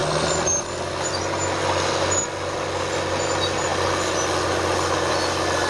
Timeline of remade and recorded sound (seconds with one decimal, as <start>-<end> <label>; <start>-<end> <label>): 0.0-5.7 recorded